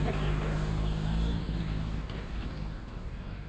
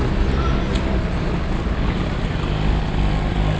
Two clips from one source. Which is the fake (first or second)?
first